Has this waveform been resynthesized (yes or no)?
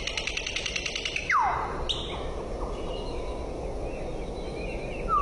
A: no